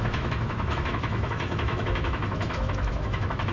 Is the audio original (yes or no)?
no